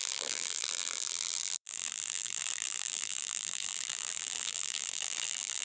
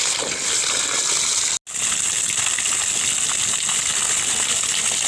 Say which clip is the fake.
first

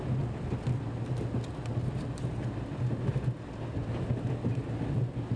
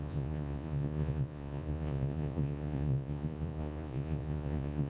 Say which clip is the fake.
second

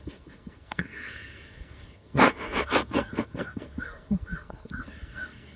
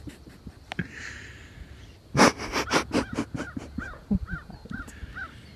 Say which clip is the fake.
first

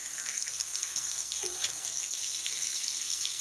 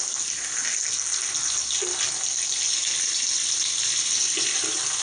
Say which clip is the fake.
first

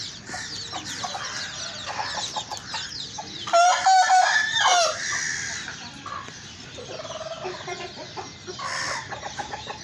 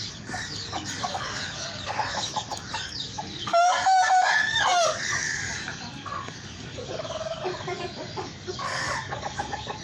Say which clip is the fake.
second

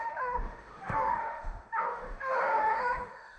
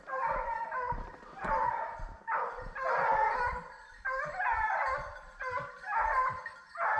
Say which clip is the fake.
first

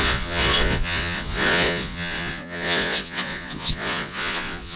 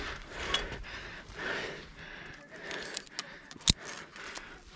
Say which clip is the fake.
first